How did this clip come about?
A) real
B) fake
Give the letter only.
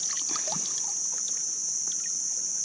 A